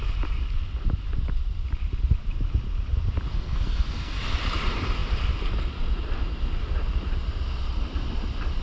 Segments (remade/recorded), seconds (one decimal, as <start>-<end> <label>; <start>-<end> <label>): 0.0-3.3 recorded; 3.3-4.2 remade; 4.2-8.6 recorded